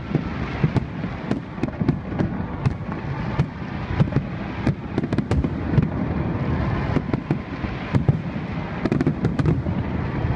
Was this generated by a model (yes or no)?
no